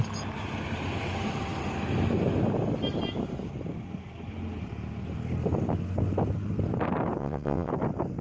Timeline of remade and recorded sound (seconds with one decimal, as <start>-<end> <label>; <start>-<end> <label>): 0.0-7.2 recorded; 7.2-7.7 remade; 7.7-8.2 recorded